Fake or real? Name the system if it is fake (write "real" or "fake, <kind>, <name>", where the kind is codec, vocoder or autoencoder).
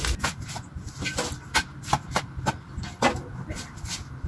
real